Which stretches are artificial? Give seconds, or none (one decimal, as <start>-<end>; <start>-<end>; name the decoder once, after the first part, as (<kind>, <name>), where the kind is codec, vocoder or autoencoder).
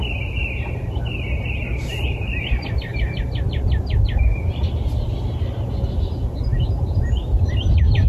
none